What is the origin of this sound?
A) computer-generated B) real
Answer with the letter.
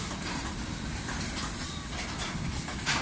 B